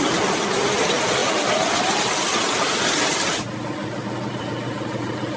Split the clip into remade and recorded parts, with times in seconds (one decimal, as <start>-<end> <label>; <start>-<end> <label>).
0.0-5.4 recorded